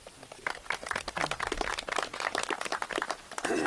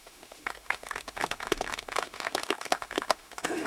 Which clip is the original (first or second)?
first